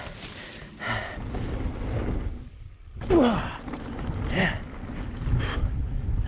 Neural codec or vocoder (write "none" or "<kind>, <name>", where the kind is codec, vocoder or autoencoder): none